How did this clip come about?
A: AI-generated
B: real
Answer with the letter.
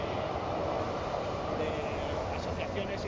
B